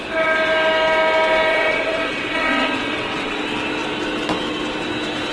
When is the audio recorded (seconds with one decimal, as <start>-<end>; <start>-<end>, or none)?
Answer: 0.0-1.5; 3.4-5.3

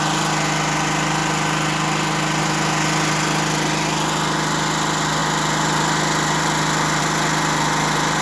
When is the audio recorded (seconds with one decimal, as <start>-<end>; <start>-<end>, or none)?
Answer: 0.0-8.2